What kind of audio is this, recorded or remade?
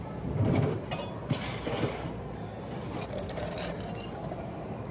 remade